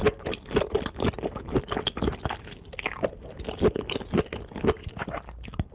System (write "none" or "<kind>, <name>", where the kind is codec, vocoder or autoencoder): none